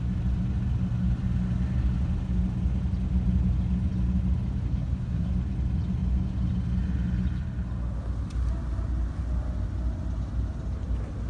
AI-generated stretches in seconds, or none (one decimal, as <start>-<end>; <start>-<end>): 4.7-5.3